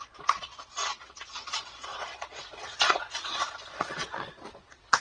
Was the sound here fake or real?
fake